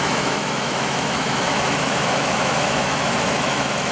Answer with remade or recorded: remade